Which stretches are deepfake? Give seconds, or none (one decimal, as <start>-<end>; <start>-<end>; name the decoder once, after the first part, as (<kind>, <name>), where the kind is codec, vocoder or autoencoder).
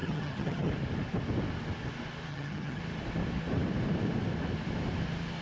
0.0-0.7 (vocoder, HiFi-GAN); 2.3-2.8